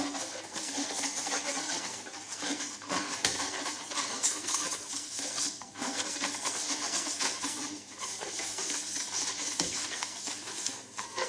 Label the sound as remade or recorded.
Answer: remade